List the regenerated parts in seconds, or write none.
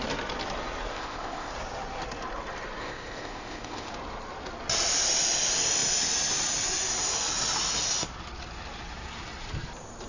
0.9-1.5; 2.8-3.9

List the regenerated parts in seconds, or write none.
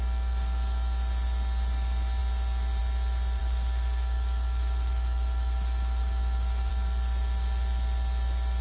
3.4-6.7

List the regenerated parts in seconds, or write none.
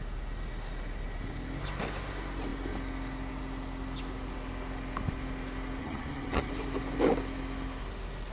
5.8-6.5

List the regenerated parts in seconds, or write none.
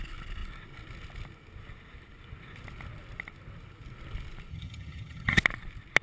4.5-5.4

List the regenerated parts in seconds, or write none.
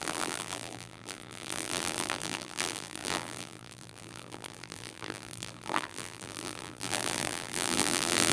0.0-8.3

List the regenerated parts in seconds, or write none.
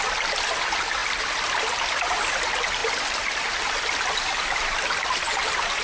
none